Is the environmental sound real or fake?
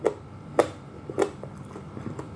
fake